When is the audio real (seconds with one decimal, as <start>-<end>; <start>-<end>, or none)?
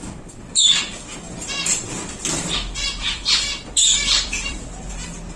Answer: 0.0-0.5; 1.0-1.7; 4.9-5.4